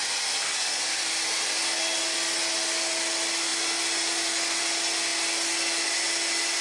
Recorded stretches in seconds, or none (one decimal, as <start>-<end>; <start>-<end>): 0.0-6.6